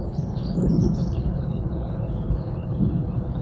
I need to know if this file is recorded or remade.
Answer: remade